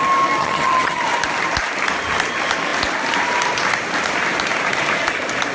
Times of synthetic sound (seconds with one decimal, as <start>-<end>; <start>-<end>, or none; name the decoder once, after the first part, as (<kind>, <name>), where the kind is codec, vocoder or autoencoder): 0.4-1.0 (vocoder, HiFi-GAN)